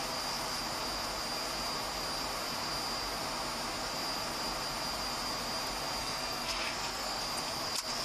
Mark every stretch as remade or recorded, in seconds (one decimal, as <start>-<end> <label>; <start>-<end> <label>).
0.0-6.0 recorded; 6.0-7.2 remade; 7.2-8.0 recorded